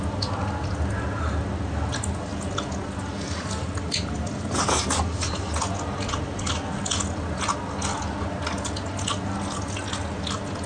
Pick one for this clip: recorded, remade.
recorded